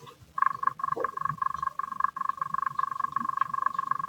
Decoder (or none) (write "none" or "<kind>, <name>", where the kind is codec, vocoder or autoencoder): vocoder, BigVGAN v2